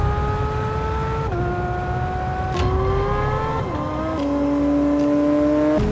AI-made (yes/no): no